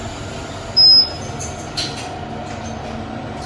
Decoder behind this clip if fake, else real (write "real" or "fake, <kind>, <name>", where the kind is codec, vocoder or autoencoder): real